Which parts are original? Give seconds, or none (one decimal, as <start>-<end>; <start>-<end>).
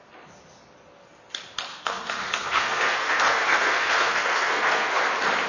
0.0-1.7; 5.0-5.5